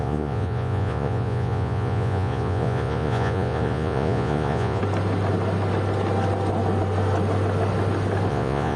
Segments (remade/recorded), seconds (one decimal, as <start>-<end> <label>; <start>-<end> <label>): 0.0-4.8 remade; 4.8-8.3 recorded; 8.3-8.8 remade